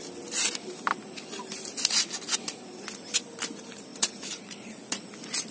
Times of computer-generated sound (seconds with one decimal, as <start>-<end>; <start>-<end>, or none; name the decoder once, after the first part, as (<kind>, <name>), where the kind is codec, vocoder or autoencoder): 3.9-5.0 (vocoder, Vocos)